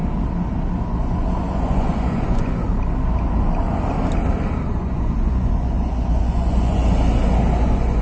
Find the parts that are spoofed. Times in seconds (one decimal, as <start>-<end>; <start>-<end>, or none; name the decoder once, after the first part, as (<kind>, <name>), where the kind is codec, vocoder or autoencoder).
0.9-2.6 (vocoder, Vocos); 4.7-6.8; 7.6-8.0